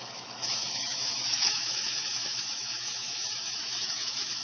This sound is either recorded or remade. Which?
remade